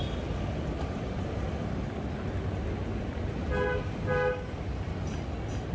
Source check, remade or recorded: recorded